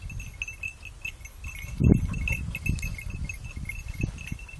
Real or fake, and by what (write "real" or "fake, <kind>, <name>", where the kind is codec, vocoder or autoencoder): real